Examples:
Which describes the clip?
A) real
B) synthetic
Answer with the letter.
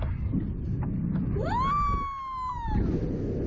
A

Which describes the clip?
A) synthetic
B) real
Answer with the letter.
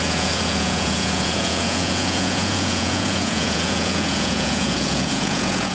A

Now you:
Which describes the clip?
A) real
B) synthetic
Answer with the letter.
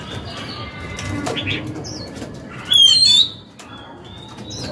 A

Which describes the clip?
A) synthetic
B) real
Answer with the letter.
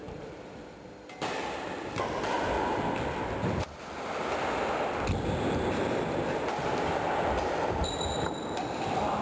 A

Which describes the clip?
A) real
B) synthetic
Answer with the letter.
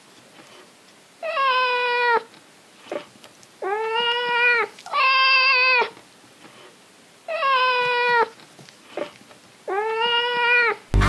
A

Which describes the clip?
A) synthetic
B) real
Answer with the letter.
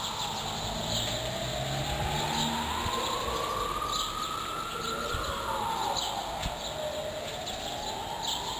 B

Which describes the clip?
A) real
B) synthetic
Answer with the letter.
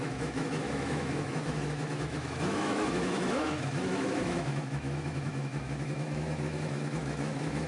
B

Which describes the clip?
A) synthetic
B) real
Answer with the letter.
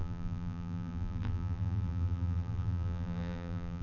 A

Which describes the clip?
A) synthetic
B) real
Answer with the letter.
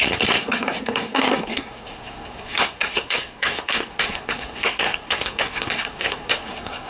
A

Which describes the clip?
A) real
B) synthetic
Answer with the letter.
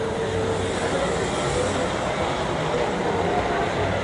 A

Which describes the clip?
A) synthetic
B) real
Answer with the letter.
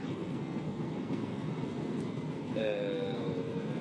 A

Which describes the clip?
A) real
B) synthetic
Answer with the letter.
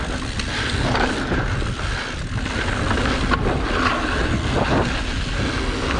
A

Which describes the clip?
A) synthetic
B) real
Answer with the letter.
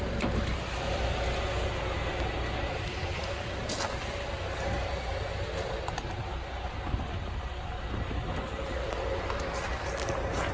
B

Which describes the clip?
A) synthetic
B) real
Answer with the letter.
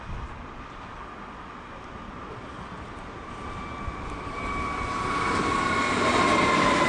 B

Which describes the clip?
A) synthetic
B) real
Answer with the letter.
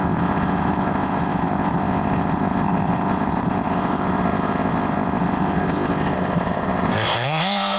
A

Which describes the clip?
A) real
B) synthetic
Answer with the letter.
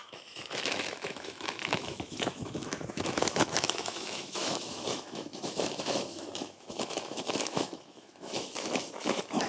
B